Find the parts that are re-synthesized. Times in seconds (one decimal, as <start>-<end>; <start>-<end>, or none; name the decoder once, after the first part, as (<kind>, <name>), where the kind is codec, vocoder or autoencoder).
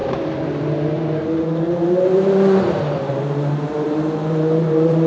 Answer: 0.0-5.1 (vocoder, BigVGAN v2)